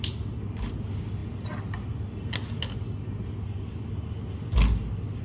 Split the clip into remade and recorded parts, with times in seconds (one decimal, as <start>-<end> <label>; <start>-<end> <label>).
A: 0.0-5.2 recorded

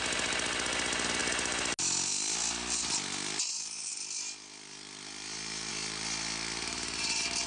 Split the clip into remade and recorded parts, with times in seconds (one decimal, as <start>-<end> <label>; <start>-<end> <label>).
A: 0.0-7.5 recorded

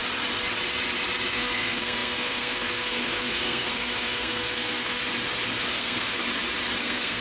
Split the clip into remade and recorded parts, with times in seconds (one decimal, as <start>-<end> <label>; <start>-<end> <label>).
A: 0.0-1.3 recorded; 1.3-5.0 remade; 5.0-5.7 recorded; 5.7-6.2 remade; 6.2-6.8 recorded; 6.8-7.2 remade

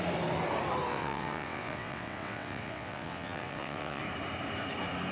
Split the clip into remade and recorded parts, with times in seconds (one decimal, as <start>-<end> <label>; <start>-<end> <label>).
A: 0.0-0.9 recorded; 0.9-4.0 remade; 4.0-5.1 recorded